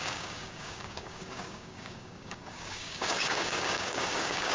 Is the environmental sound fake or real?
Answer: fake